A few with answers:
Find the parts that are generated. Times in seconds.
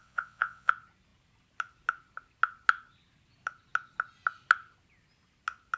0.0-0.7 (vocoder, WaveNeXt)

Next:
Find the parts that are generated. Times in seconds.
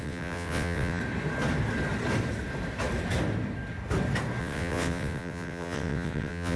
0.0-1.0 (vocoder, WaveNeXt); 4.4-6.6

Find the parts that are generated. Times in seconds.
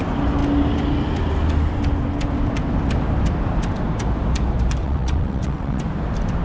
4.8-5.8 (vocoder, WaveNeXt)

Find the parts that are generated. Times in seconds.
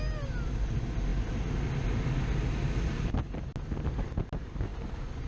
none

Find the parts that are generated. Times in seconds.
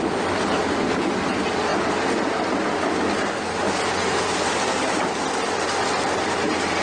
none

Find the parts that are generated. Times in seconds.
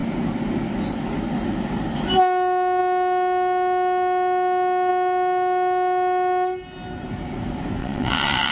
7.8-8.5 (vocoder, WaveNeXt)